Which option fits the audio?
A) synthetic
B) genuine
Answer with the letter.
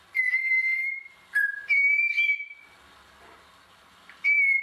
B